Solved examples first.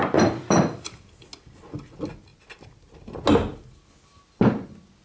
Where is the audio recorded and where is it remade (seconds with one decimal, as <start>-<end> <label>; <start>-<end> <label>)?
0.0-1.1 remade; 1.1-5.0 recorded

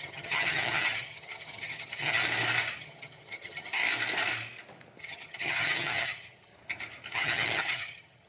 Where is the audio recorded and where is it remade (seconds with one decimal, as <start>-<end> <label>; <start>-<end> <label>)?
0.0-2.2 remade; 2.2-2.8 recorded; 2.8-3.8 remade; 3.8-5.0 recorded; 5.0-6.5 remade; 6.5-7.1 recorded; 7.1-8.3 remade

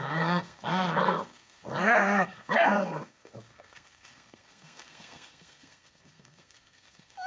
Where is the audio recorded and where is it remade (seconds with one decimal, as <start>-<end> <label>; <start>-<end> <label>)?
0.0-7.3 remade